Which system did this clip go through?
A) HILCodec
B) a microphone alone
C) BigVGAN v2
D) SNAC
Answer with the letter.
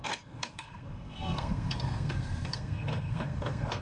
D